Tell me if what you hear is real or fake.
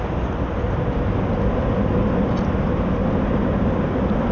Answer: real